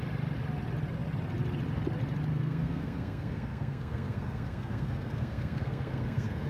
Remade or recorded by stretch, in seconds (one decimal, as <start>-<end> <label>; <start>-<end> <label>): 0.0-2.3 recorded; 2.3-6.5 remade